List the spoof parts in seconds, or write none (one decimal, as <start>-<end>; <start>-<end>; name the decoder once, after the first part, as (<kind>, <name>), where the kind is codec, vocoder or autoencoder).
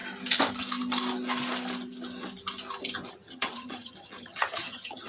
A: 3.1-5.1 (vocoder, HiFi-GAN)